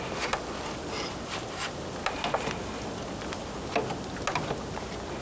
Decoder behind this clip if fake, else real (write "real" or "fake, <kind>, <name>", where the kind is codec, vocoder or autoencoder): real